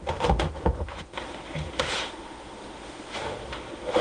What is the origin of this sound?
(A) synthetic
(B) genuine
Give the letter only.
A